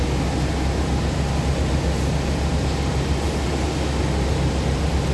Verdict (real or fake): real